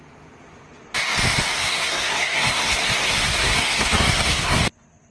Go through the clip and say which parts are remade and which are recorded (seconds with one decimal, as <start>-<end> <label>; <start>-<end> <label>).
0.0-1.5 recorded; 1.5-4.6 remade; 4.6-5.1 recorded